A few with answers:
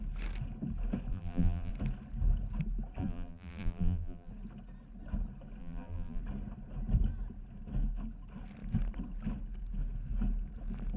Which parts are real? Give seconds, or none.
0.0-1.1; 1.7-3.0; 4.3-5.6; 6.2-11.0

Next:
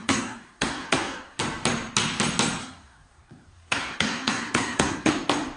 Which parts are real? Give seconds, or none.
1.4-2.6; 5.1-5.6

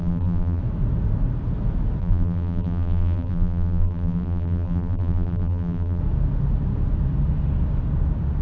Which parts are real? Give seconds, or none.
0.6-2.0; 6.0-8.4